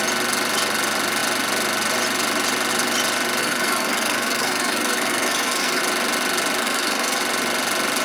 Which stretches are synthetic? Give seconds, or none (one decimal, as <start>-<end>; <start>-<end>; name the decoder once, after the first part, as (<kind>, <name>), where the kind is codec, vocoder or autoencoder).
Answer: 3.4-5.8 (codec, SNAC); 6.6-7.2